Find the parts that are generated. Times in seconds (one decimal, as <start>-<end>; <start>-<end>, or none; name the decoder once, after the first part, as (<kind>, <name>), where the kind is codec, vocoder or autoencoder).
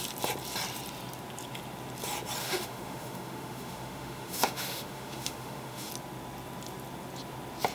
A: 2.4-5.9 (autoencoder, DAC-VAE)